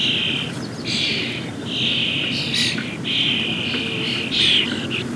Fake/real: real